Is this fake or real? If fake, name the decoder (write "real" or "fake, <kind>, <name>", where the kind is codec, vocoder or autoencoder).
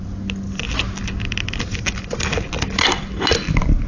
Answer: real